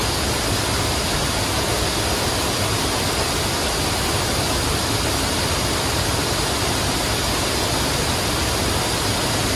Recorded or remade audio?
recorded